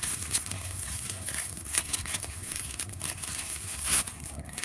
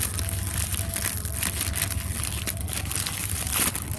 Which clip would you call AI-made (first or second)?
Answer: first